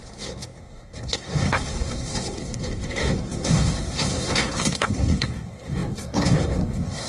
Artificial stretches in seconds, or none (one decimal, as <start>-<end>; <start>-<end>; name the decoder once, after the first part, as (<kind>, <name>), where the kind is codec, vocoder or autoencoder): 0.0-7.1 (codec, SNAC)